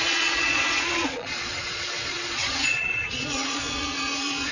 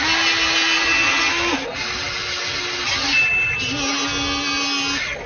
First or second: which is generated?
first